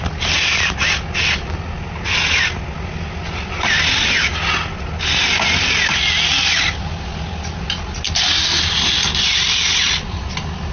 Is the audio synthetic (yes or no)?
no